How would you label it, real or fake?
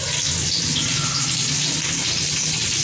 real